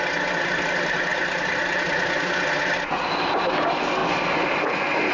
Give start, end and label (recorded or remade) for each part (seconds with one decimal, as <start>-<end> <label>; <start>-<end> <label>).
0.0-5.1 recorded